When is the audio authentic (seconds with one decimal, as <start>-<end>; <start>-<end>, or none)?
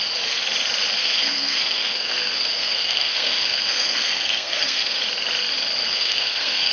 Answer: 0.0-1.0; 5.0-5.8